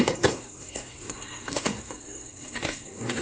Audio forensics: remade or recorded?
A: remade